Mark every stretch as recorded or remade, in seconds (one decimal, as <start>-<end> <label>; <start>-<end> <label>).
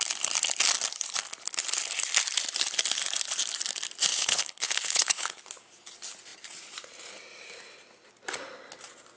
0.0-4.1 recorded; 4.1-5.4 remade; 5.4-9.2 recorded